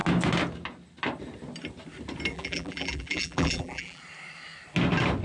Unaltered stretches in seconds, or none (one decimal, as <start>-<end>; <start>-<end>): 0.0-2.3; 4.0-5.2